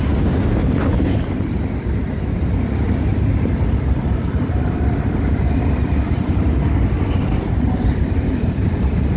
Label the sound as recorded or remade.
recorded